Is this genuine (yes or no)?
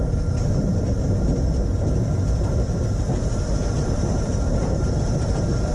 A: no